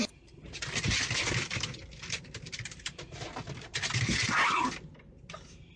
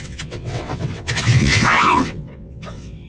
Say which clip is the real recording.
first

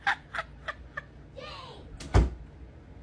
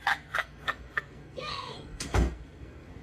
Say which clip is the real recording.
first